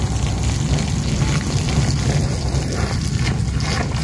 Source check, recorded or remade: recorded